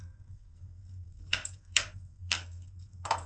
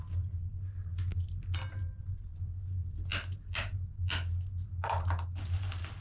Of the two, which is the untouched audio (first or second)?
second